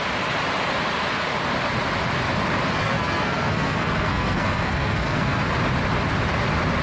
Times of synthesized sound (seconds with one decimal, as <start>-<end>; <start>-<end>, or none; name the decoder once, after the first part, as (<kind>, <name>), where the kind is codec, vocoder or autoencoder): 2.8-5.4 (codec, SNAC)